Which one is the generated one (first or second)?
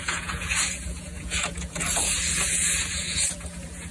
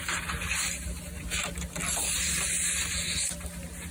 first